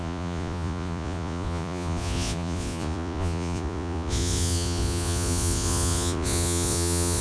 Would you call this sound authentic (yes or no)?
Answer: no